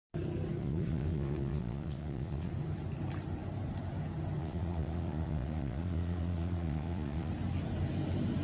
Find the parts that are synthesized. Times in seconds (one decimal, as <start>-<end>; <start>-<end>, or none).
0.6-2.5; 4.4-7.3